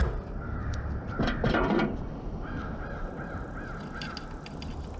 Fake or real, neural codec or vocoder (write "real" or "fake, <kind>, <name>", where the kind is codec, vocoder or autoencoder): real